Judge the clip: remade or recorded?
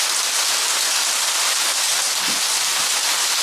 recorded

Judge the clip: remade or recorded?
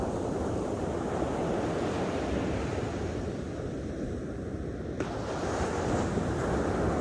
recorded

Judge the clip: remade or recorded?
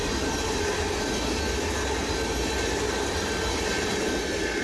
recorded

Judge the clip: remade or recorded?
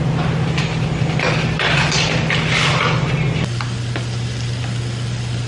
recorded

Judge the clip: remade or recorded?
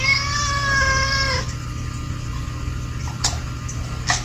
recorded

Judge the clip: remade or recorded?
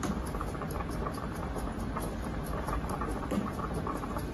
remade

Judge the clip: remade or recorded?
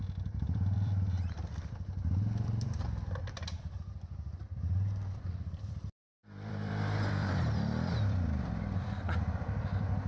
remade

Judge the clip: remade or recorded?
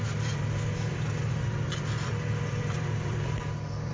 remade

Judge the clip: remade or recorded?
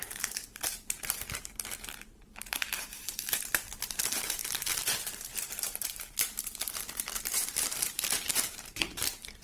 remade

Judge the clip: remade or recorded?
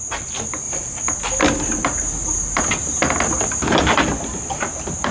recorded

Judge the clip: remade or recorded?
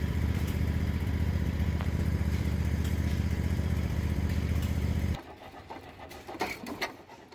remade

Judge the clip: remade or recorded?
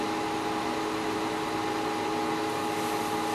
recorded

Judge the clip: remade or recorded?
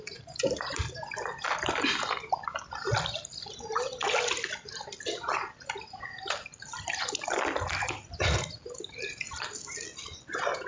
recorded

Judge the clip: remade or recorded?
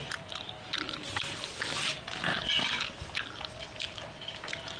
recorded